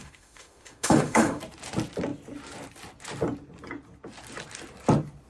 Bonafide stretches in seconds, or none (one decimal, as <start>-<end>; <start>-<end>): 1.4-5.3